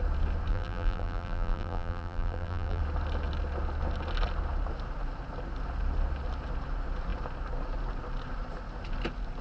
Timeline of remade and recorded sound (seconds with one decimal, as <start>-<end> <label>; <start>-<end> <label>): 0.0-0.5 recorded; 0.5-2.8 remade; 2.8-9.4 recorded